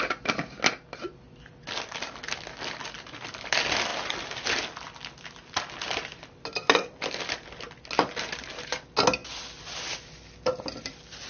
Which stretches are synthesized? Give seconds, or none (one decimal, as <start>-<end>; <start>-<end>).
none